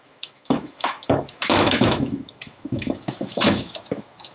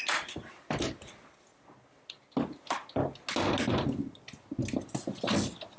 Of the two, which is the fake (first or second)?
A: first